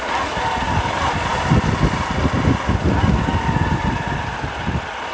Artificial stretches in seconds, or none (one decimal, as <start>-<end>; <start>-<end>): none